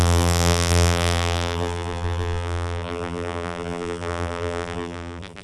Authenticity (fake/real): fake